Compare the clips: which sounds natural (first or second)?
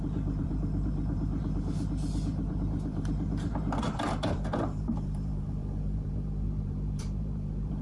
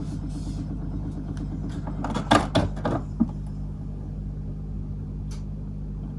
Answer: second